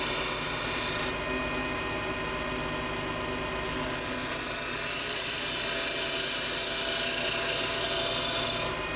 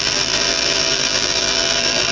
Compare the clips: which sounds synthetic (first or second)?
second